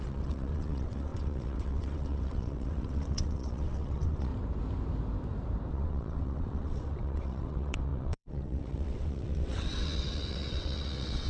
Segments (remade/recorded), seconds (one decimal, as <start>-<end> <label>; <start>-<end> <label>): 0.0-4.3 remade; 4.3-5.7 recorded; 5.7-11.3 remade